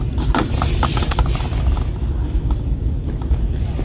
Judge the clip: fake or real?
real